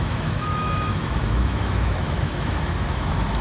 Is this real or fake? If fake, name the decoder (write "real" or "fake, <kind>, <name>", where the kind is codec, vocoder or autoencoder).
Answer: fake, autoencoder, DAC-VAE